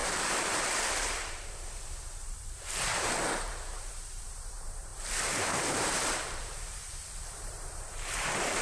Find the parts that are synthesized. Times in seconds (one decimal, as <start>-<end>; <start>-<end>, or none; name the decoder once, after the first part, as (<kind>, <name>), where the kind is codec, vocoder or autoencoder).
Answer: 0.0-4.9 (vocoder, BigVGAN v2); 5.7-8.6

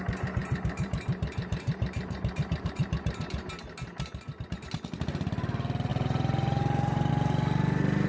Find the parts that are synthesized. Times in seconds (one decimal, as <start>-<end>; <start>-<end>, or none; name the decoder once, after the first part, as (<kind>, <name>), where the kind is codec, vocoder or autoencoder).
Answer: 0.4-3.5 (vocoder, BigVGAN v2); 5.9-7.1

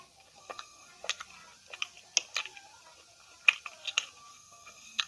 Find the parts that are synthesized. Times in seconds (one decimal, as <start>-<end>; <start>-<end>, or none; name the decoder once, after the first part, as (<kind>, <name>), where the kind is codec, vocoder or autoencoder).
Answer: 0.4-0.9 (codec, SNAC); 4.3-5.1

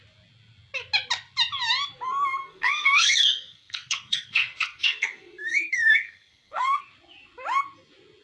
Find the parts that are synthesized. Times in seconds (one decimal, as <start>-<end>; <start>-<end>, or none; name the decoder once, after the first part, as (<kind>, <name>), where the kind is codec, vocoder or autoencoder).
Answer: 2.4-6.8 (codec, SNAC)